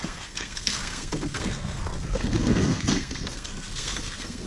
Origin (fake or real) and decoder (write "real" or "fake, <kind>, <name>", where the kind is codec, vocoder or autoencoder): fake, codec, SNAC